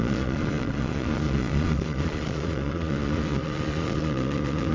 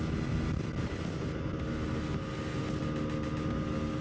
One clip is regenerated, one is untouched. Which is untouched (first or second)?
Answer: second